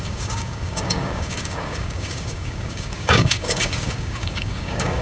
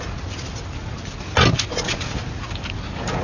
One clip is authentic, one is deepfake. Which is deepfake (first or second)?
first